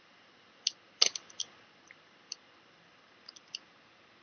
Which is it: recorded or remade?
recorded